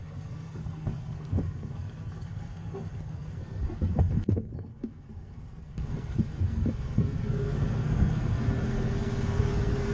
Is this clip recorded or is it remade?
remade